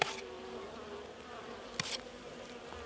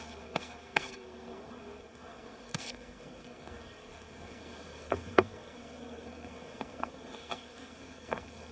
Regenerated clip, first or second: second